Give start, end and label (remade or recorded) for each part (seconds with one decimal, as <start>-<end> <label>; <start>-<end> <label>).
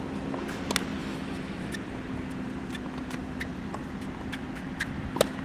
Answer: 0.0-1.0 recorded; 1.0-1.7 remade; 1.7-5.4 recorded